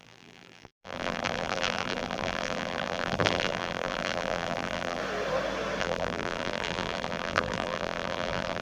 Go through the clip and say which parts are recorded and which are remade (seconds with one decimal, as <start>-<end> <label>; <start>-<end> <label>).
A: 0.0-5.0 remade; 5.0-5.8 recorded; 5.8-8.6 remade